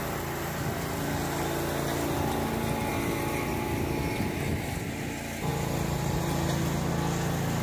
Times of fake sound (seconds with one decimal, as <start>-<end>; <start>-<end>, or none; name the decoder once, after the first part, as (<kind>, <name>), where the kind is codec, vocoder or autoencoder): 5.5-6.9 (vocoder, BigVGAN v2)